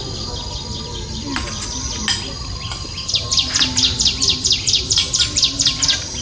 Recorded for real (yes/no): yes